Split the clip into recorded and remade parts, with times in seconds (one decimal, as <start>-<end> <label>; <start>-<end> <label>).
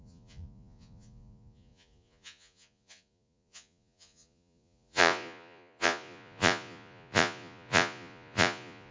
0.0-8.9 remade